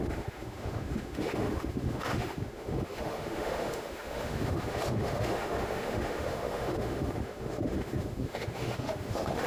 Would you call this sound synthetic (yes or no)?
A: yes